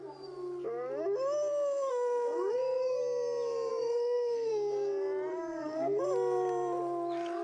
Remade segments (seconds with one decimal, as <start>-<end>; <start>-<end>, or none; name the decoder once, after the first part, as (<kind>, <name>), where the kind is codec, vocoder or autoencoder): 1.9-3.0 (codec, SNAC); 3.7-4.5; 5.3-6.0